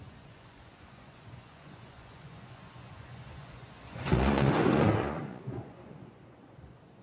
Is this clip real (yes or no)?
no